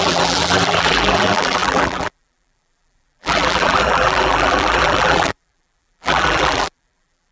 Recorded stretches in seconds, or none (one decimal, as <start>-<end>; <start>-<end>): none